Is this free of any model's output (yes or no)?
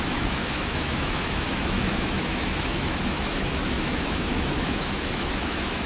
no